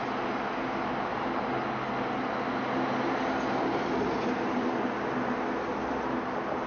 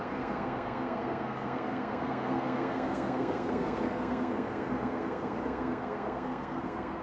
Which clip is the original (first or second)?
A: first